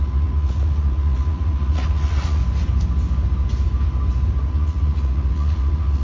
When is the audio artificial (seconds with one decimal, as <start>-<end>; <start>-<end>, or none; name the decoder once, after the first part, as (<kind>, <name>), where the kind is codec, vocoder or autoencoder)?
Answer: 0.0-2.4 (vocoder, Vocos); 4.5-6.0